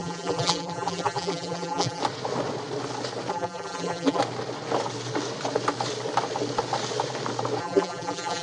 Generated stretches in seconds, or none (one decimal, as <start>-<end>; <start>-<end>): 0.0-2.0; 3.3-4.2; 7.6-8.4